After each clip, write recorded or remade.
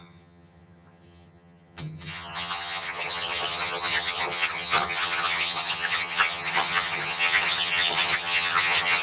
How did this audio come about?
remade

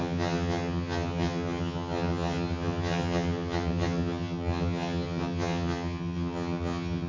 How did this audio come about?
remade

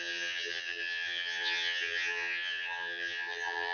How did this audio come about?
remade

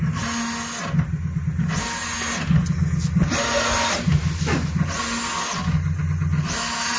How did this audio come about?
recorded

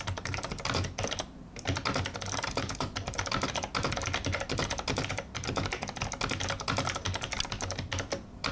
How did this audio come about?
recorded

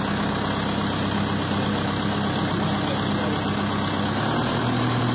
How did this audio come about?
recorded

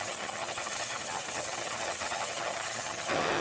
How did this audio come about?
remade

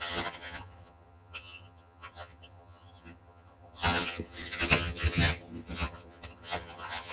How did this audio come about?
remade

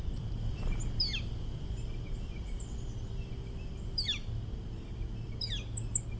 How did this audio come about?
recorded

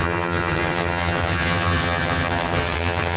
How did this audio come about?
remade